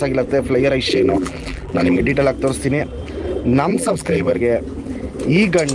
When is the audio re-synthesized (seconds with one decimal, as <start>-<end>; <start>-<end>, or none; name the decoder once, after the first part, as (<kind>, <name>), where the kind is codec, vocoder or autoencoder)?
0.9-2.0 (vocoder, BigVGAN v2); 3.7-4.4